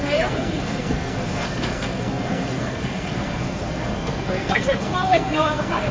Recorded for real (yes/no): no